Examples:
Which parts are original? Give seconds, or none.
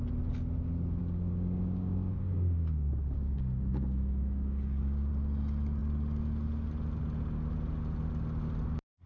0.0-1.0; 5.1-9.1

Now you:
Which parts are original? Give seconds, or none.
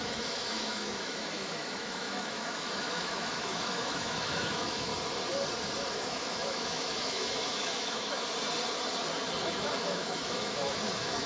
4.9-5.9; 8.2-9.4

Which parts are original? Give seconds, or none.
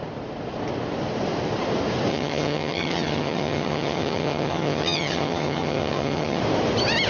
0.0-2.1; 6.4-7.1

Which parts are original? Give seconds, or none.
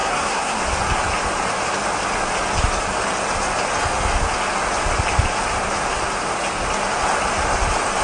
0.6-8.0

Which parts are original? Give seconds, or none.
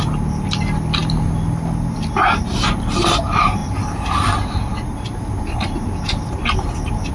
0.0-7.1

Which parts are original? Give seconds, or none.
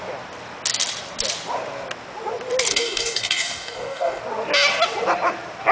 0.0-2.7; 4.2-5.7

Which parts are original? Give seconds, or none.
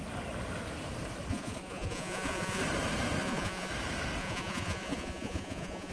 0.0-1.3; 2.6-3.2; 3.7-4.2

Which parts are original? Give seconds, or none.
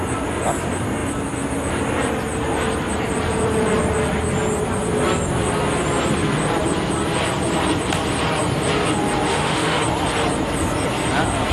0.0-9.3; 9.8-11.5